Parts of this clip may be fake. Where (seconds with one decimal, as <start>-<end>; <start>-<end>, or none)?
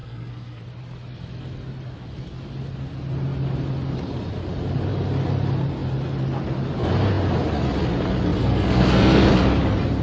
0.0-0.6; 8.4-9.3